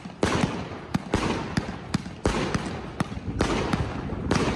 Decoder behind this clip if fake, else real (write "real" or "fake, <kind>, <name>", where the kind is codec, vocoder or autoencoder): real